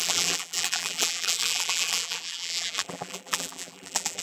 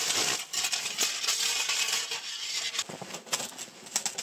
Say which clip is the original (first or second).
second